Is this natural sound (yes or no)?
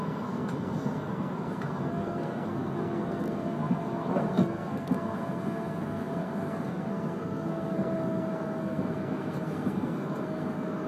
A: no